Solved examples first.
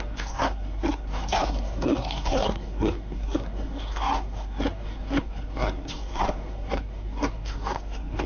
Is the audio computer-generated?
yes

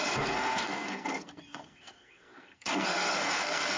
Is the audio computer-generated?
yes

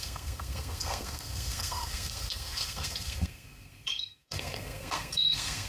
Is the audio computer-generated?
yes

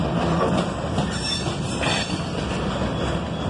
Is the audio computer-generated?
no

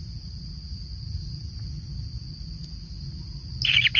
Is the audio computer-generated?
no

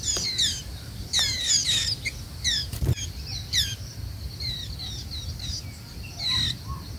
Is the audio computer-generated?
no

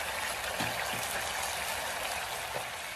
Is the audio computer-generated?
no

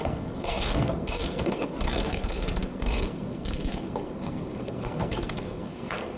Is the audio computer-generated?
yes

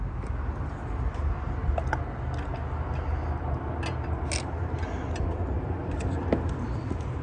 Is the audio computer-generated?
no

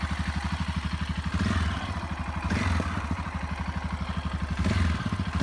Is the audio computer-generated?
no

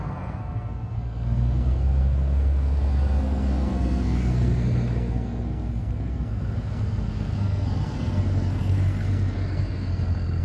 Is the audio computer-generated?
yes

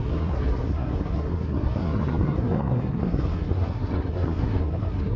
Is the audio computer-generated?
yes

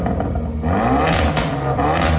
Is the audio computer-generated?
no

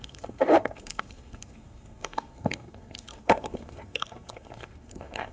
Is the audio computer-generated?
yes